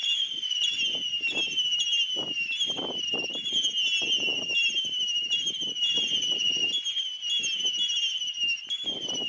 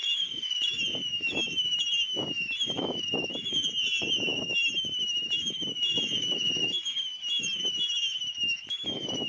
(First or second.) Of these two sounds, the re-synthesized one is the second